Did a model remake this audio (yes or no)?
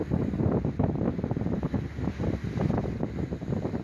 no